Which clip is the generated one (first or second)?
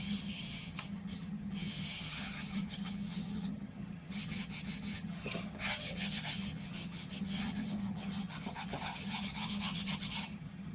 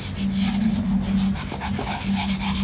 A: first